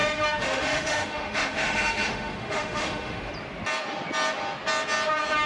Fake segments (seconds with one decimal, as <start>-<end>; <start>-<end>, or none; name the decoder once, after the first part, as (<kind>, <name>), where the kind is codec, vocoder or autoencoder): 0.0-3.3 (autoencoder, DAC-VAE)